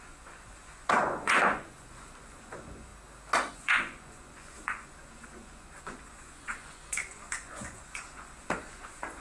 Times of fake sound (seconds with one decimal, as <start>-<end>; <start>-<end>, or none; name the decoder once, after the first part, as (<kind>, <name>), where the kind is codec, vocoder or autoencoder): 0.0-2.9 (vocoder, Vocos); 3.5-9.2